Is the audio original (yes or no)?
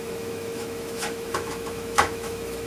no